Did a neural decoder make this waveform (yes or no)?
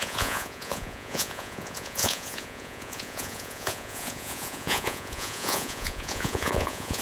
yes